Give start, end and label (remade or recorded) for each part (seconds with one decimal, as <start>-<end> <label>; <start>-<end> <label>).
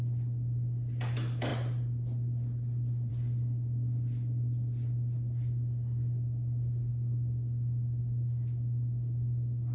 0.0-9.7 recorded